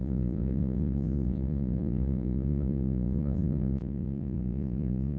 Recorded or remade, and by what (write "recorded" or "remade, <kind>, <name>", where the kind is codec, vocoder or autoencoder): remade, vocoder, Vocos